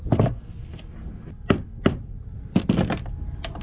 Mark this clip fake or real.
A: real